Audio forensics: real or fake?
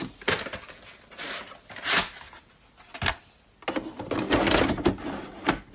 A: real